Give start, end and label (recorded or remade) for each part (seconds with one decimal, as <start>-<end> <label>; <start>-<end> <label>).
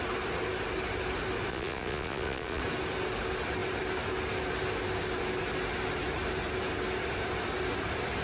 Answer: 0.0-1.5 recorded; 1.5-2.6 remade; 2.6-8.2 recorded